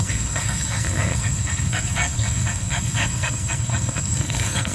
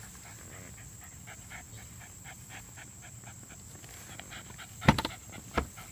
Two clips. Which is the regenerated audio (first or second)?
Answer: first